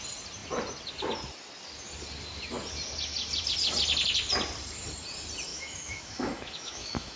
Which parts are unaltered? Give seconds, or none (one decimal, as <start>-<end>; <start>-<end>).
0.0-5.5